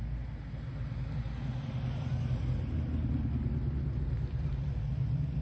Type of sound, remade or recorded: recorded